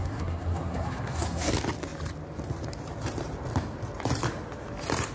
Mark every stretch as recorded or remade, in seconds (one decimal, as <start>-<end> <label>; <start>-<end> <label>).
0.0-1.5 remade; 1.5-5.1 recorded

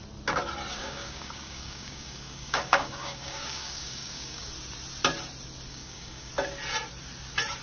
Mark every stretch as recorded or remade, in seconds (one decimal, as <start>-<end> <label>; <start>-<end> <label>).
0.0-0.8 recorded; 0.8-4.5 remade; 4.5-5.7 recorded; 5.7-6.3 remade; 6.3-7.6 recorded

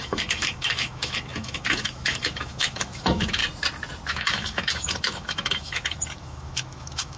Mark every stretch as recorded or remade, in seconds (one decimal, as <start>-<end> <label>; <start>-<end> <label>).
0.0-3.4 remade; 3.4-4.1 recorded; 4.1-7.2 remade

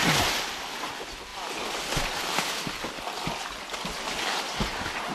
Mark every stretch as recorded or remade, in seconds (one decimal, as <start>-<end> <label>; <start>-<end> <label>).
0.0-5.1 recorded